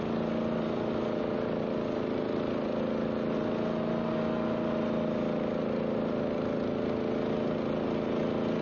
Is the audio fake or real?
real